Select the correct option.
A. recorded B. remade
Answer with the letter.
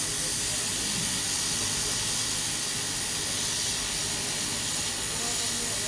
A